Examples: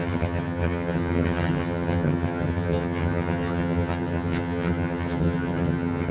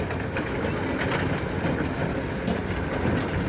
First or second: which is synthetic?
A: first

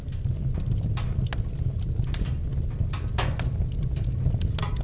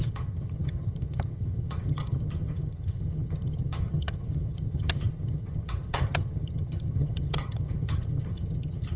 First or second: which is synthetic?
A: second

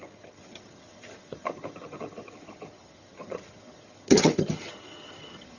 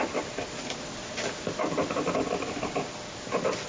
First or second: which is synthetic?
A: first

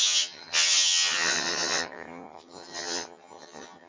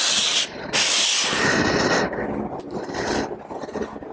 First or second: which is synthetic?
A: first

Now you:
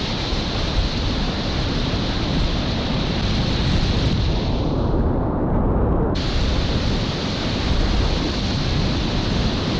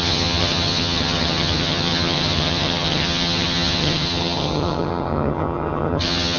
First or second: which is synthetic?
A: second